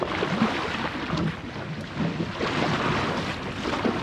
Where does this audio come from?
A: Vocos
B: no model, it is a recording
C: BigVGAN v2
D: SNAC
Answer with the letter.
B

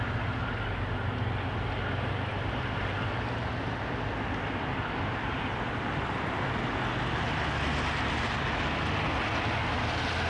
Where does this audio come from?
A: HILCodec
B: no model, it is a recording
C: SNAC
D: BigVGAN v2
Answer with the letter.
B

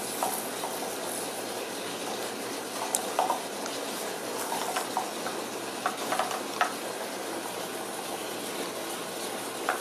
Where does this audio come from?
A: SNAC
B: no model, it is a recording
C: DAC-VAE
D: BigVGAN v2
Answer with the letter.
B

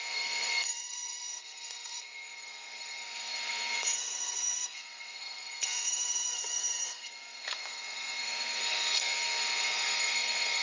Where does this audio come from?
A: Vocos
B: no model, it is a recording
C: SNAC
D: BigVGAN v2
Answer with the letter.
C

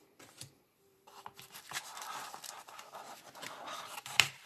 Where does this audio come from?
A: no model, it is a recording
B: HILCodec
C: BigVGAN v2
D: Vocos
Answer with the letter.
C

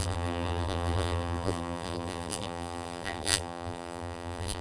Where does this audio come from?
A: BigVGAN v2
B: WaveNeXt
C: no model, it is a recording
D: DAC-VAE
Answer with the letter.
A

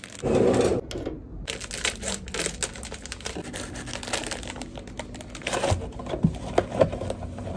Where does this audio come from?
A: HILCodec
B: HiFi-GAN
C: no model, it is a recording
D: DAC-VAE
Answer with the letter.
C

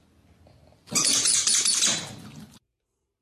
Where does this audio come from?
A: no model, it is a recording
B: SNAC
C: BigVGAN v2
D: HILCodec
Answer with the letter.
A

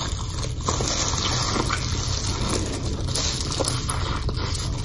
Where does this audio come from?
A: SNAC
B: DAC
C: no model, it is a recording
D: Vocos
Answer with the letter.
C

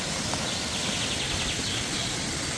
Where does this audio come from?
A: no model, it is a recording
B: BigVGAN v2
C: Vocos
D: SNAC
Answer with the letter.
A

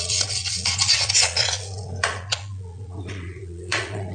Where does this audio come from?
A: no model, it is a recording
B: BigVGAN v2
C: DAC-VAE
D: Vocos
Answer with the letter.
D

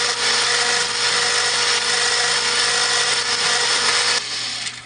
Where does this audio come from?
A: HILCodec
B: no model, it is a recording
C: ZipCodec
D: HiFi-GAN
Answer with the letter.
B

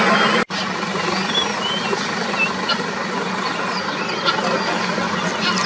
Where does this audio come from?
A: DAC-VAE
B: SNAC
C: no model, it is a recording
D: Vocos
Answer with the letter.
C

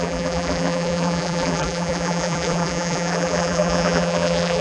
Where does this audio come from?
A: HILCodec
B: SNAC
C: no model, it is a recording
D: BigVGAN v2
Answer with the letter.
D